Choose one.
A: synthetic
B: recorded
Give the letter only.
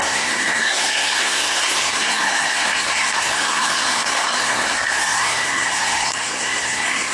A